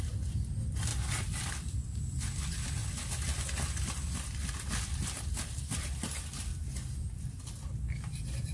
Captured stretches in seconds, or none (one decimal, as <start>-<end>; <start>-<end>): 0.0-6.5; 7.2-8.5